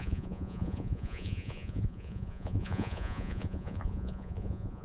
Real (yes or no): no